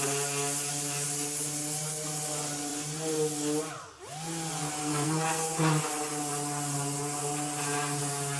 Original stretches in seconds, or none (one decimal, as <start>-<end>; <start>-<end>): 0.0-4.8; 5.5-8.4